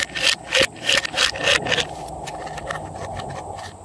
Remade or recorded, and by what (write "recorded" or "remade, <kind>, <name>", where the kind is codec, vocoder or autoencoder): recorded